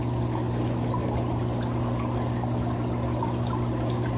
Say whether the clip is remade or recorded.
recorded